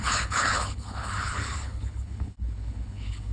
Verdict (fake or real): fake